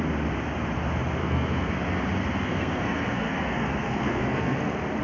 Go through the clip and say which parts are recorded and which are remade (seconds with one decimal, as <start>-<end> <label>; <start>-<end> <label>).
0.0-1.2 recorded; 1.2-1.7 remade; 1.7-2.4 recorded; 2.4-4.6 remade; 4.6-5.0 recorded